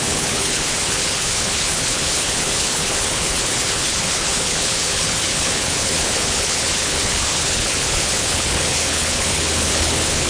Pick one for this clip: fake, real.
fake